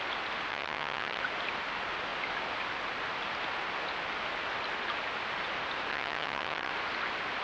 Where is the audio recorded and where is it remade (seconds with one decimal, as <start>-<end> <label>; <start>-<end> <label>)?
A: 0.0-0.5 recorded; 0.5-1.2 remade; 1.2-5.9 recorded; 5.9-6.7 remade; 6.7-7.4 recorded